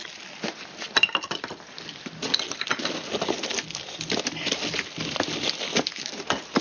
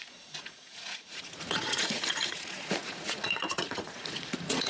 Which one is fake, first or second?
second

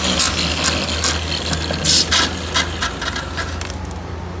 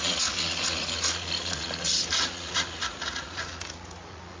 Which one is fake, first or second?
second